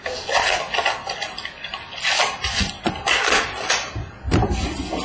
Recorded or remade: recorded